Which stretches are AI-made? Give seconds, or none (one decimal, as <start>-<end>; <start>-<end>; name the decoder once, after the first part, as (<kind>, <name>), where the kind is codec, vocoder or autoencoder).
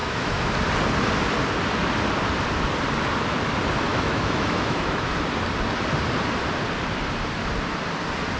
0.0-0.5 (autoencoder, DAC-VAE); 3.9-5.1